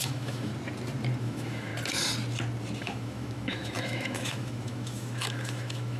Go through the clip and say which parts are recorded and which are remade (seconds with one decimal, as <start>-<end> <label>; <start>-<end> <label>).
0.0-0.5 remade; 0.5-1.2 recorded; 1.2-1.7 remade; 1.7-2.8 recorded; 2.8-6.0 remade